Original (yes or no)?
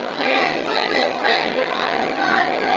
no